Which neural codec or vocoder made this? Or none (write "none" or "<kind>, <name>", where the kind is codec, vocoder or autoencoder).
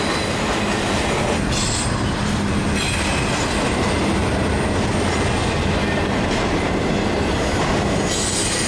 none